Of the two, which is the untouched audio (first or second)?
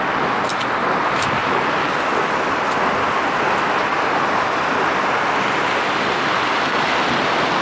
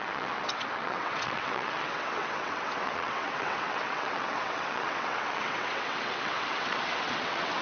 first